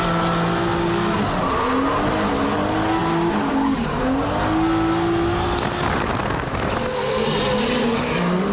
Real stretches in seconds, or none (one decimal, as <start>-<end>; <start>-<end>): 0.0-8.5